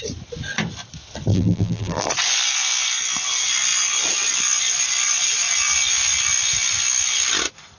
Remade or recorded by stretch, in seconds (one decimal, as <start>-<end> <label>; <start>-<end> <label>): 0.0-1.3 recorded; 1.3-2.1 remade; 2.1-7.8 recorded